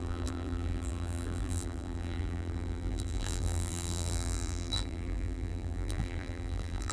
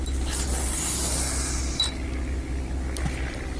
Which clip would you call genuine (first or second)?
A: second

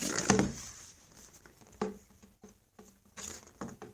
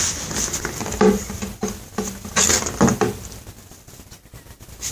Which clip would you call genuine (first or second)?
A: second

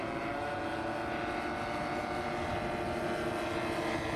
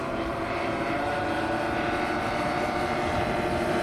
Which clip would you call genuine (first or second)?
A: first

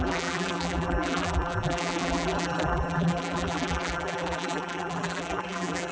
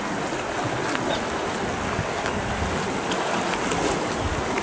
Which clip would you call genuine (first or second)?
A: second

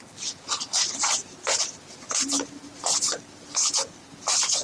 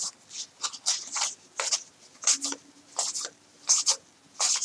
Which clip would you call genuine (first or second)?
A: second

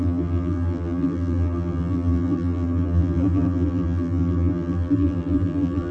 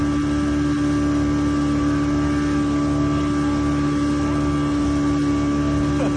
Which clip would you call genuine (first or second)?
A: second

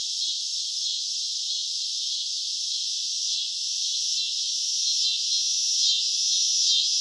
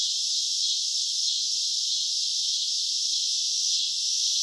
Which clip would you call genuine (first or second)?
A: first